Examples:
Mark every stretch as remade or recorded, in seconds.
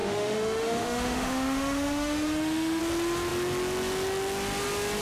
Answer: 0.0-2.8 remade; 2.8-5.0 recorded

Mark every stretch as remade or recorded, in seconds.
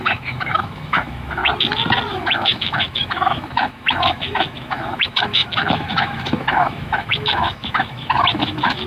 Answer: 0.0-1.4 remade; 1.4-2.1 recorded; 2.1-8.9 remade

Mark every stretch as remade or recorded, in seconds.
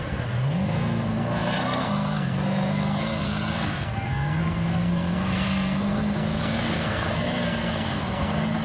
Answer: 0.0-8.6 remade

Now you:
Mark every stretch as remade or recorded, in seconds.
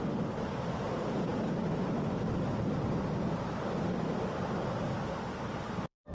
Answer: 0.0-6.1 remade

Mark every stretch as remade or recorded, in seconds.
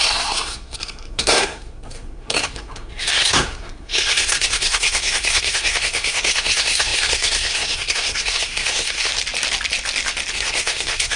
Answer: 0.0-9.1 remade; 9.1-10.3 recorded; 10.3-11.2 remade